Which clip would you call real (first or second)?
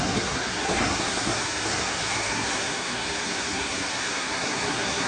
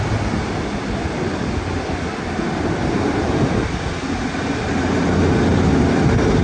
second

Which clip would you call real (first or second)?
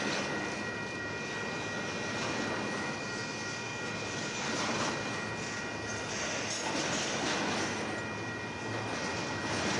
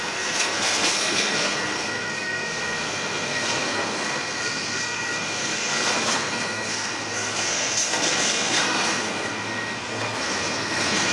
first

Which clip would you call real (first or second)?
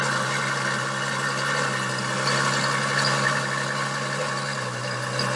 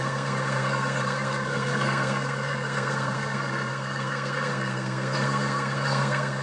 first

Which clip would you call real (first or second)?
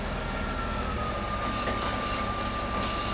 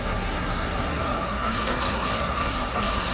first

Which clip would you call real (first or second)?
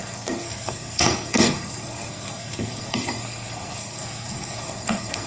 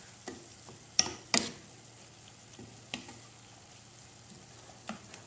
second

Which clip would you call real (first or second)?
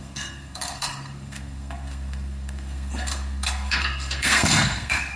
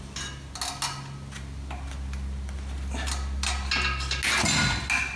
second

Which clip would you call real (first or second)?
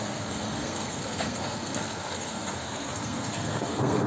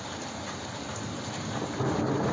second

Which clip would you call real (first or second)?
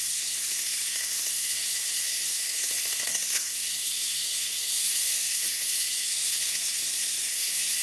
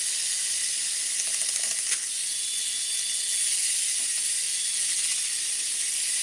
second